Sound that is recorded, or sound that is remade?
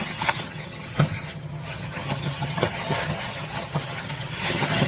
remade